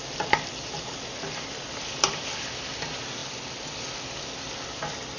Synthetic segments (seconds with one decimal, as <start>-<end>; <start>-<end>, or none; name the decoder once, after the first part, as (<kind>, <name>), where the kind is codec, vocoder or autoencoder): none